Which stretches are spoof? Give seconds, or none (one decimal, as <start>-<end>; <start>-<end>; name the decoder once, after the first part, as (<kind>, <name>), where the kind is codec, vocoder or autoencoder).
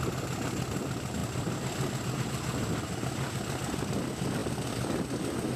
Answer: none